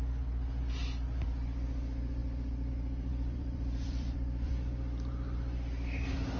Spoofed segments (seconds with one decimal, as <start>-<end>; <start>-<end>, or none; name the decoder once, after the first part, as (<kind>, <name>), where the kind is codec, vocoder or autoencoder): 2.2-2.7 (vocoder, BigVGAN v2); 3.1-4.5